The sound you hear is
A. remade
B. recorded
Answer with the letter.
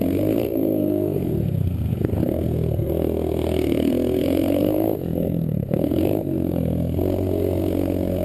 A